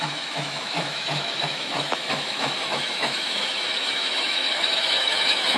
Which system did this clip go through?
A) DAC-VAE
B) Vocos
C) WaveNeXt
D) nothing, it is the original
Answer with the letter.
A